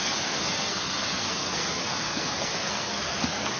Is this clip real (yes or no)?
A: no